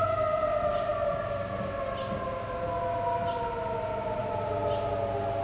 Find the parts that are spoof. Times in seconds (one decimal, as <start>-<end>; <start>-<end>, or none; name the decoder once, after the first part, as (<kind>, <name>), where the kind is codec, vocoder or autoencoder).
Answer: none